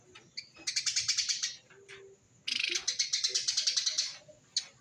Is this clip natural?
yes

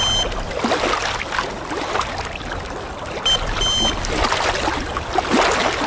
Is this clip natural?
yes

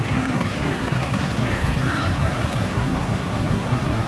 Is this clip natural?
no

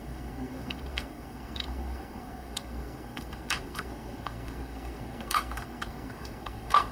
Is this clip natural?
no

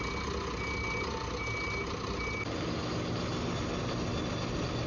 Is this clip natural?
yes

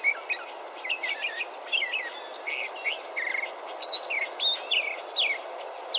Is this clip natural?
yes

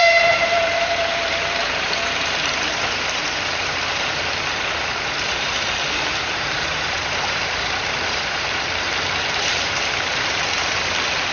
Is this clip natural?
no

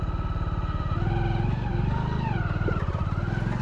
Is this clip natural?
yes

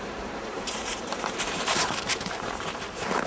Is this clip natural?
no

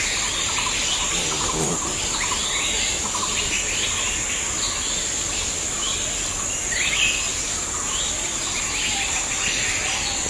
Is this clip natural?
yes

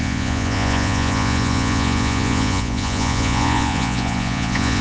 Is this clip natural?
no